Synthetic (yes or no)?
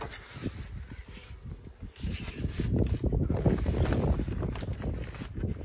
no